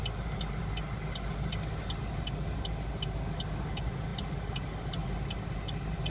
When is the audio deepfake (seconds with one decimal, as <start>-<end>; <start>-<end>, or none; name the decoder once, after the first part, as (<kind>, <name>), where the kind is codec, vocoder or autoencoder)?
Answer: none